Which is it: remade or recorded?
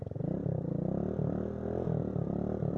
recorded